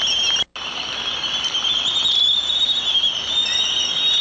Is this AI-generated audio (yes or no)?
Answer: no